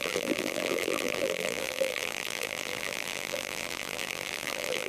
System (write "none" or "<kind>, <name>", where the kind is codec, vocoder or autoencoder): vocoder, BigVGAN v2